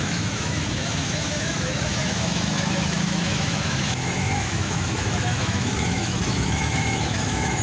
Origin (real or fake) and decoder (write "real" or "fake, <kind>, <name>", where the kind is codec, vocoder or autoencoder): fake, autoencoder, DAC-VAE